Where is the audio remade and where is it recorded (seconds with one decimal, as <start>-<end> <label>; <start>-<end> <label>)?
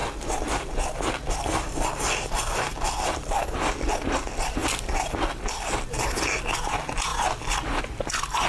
0.0-8.5 recorded